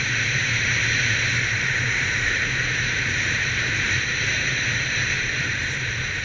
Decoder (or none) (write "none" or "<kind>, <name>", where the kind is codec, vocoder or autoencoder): vocoder, BigVGAN v2